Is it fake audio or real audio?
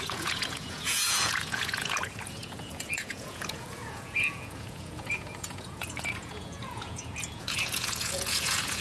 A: fake